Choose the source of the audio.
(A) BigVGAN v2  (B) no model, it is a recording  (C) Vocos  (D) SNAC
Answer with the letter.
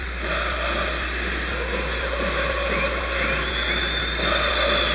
B